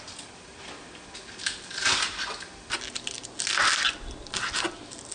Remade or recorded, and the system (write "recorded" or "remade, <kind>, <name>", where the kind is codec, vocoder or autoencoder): recorded